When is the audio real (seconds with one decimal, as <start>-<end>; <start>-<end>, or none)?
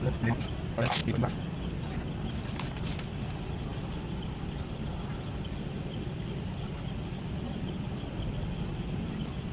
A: 0.0-3.7; 8.0-9.5